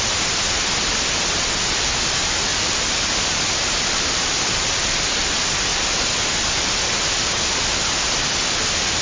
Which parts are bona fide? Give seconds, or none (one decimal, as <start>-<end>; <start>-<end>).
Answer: 0.0-2.5; 5.3-9.0